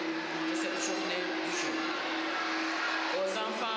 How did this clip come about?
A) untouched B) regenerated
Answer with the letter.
A